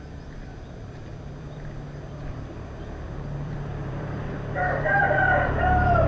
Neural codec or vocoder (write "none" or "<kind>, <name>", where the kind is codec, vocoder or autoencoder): vocoder, BigVGAN v2